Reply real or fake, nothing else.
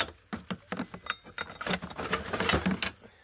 real